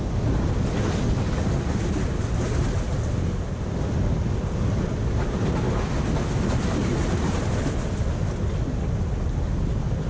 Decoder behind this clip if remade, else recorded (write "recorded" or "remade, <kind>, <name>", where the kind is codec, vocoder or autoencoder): recorded